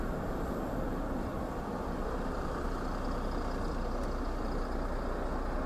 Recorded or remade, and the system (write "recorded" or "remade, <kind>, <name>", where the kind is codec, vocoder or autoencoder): recorded